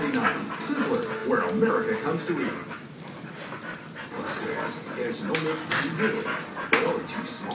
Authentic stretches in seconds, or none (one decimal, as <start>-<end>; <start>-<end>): 0.0-7.5